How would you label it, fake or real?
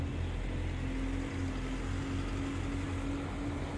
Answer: real